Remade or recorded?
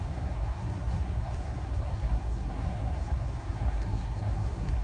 remade